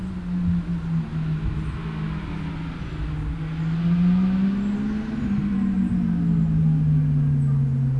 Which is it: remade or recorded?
recorded